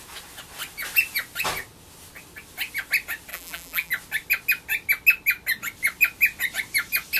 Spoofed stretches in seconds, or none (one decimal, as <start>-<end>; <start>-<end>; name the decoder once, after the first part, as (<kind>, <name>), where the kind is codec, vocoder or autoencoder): 3.3-3.9 (vocoder, BigVGAN v2)